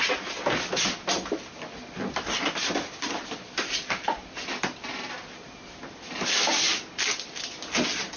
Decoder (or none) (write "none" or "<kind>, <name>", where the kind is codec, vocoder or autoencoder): none